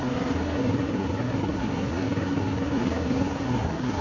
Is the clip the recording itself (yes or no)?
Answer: no